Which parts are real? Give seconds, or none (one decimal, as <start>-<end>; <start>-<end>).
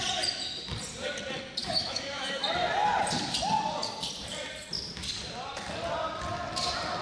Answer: 0.0-1.6; 2.4-7.0